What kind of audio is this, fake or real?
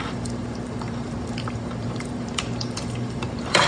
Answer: fake